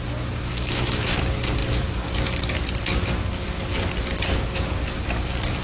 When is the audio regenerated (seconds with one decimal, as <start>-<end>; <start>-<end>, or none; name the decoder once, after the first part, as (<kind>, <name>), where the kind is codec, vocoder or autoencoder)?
0.5-1.2 (autoencoder, DAC-VAE)

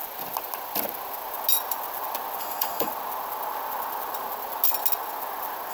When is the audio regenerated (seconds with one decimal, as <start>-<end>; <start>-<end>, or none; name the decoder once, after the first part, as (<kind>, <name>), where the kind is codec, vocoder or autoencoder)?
2.4-2.9 (autoencoder, DAC-VAE)

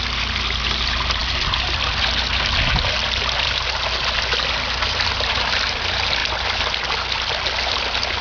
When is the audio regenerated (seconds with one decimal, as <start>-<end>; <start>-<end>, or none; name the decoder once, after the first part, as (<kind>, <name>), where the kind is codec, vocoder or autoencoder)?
none

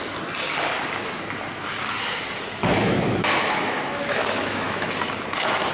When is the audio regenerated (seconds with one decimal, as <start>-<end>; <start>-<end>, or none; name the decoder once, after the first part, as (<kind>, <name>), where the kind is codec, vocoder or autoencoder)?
2.6-4.9 (autoencoder, DAC-VAE)